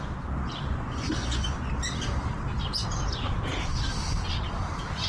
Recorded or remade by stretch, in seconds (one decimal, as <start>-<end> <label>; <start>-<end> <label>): 0.0-0.7 recorded; 0.7-1.7 remade; 1.7-5.1 recorded